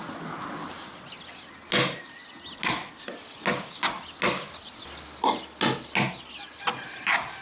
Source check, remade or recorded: recorded